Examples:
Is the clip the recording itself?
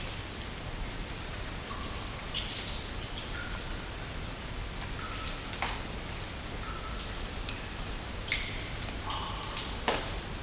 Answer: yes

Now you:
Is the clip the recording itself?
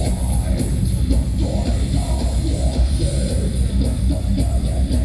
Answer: yes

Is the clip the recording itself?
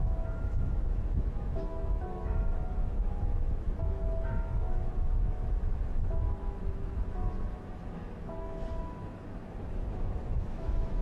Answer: no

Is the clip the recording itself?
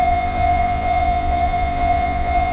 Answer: no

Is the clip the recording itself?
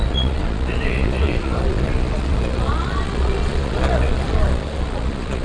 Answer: no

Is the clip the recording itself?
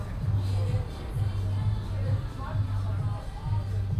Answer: yes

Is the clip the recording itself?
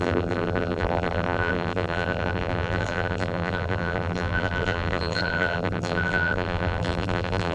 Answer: no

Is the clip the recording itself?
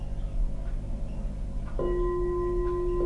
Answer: yes